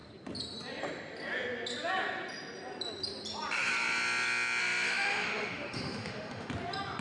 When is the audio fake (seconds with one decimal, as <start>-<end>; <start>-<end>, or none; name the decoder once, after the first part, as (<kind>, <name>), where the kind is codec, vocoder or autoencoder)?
4.6-6.5 (autoencoder, DAC-VAE)